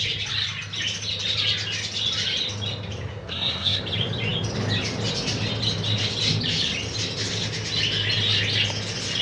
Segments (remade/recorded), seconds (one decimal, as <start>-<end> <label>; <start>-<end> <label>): 0.0-3.1 recorded; 3.1-3.8 remade; 3.8-9.2 recorded